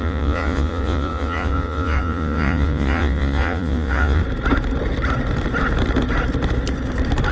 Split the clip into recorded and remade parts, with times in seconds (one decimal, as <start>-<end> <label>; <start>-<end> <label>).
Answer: 0.0-4.2 remade; 4.2-7.3 recorded